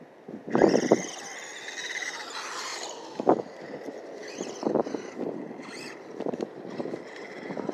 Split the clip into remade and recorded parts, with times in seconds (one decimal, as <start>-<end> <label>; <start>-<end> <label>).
0.0-7.7 recorded